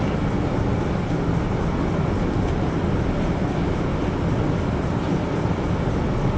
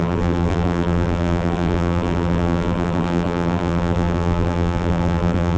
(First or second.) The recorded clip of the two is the first